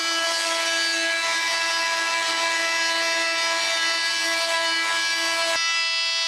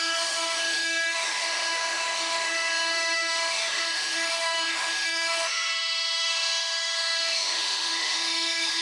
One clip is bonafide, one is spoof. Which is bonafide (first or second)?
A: first